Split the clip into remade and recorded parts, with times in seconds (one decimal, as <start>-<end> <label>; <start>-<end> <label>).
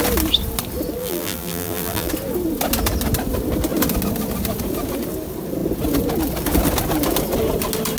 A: 0.0-1.0 recorded; 1.0-2.1 remade; 2.1-8.0 recorded